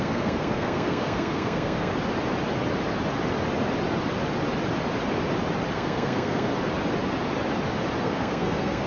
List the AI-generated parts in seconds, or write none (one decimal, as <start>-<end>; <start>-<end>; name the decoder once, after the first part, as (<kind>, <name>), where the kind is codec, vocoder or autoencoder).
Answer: 0.0-1.9 (codec, SNAC); 5.7-6.5; 8.0-8.9